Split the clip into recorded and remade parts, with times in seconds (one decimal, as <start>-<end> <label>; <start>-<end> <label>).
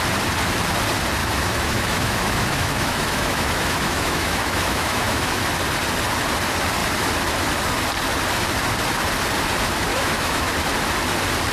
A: 0.0-1.2 recorded; 1.2-5.4 remade; 5.4-9.9 recorded; 9.9-10.5 remade; 10.5-11.5 recorded